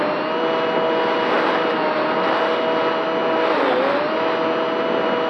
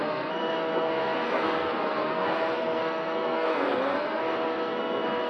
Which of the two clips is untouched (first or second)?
first